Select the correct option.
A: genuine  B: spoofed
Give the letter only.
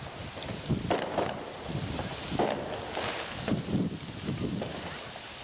A